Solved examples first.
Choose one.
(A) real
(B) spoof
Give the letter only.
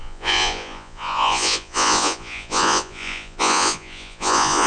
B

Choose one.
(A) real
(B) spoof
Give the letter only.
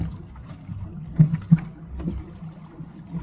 A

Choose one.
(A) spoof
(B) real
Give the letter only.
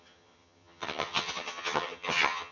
A